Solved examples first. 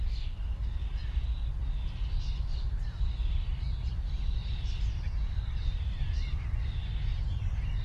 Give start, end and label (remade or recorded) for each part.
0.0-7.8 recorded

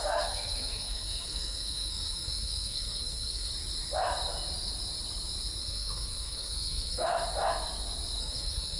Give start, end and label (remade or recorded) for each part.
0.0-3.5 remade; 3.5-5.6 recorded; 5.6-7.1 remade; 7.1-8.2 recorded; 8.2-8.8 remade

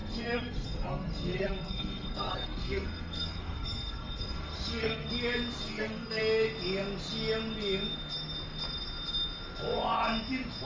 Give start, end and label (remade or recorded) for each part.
0.0-5.1 remade; 5.1-5.6 recorded; 5.6-6.2 remade; 6.2-10.7 recorded

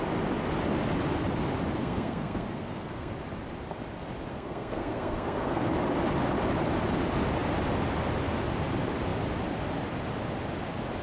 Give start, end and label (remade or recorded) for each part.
0.0-1.8 recorded; 1.8-3.1 remade; 3.1-4.3 recorded; 4.3-5.7 remade; 5.7-11.0 recorded